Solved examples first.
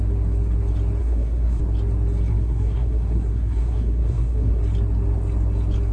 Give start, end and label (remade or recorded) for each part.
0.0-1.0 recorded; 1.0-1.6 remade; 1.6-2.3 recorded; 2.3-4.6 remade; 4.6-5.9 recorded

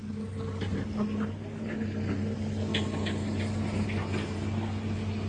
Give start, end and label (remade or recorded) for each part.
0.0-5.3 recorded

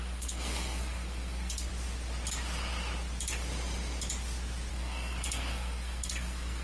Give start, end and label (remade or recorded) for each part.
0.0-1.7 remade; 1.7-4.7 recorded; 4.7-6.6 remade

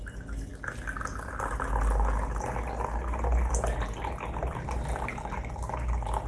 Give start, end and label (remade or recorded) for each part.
0.0-6.3 recorded

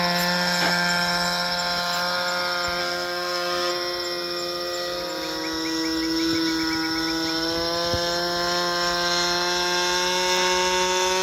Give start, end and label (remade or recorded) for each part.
0.0-2.8 recorded; 2.8-3.7 remade; 3.7-11.2 recorded